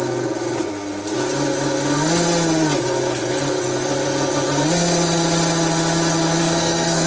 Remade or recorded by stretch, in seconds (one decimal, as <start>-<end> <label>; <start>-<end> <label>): 0.0-6.4 recorded; 6.4-7.1 remade